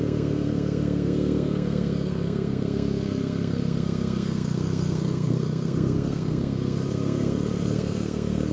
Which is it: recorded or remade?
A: remade